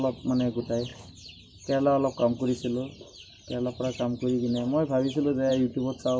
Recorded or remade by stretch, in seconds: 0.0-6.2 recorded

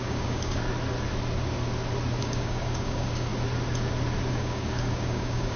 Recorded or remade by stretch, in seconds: 0.0-0.6 remade; 0.6-2.2 recorded; 2.2-3.3 remade; 3.3-4.3 recorded; 4.3-5.6 remade

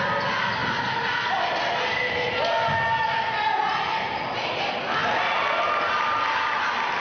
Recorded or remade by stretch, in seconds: 0.0-7.0 recorded